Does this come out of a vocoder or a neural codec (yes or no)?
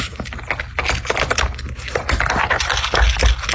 no